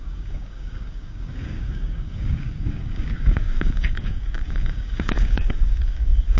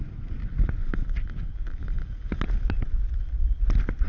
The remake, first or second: first